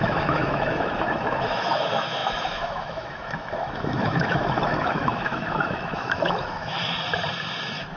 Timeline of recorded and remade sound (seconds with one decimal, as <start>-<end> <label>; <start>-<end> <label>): 0.0-6.8 remade; 6.8-8.0 recorded